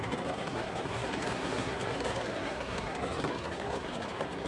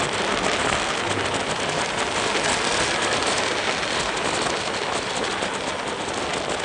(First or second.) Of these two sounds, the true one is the second